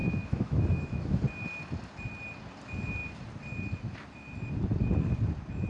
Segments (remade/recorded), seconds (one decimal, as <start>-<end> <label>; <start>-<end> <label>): 0.0-1.2 remade; 1.2-5.7 recorded